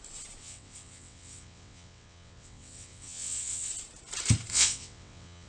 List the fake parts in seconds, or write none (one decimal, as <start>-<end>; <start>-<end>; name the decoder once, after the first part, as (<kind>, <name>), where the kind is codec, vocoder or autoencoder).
0.4-3.7 (vocoder, WaveNeXt); 4.5-5.5